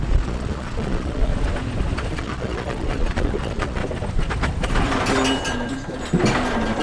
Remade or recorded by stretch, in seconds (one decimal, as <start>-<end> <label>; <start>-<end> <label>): 0.0-1.3 remade; 1.3-2.1 recorded; 2.1-3.8 remade; 3.8-6.8 recorded